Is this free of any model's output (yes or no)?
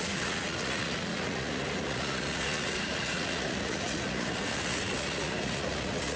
no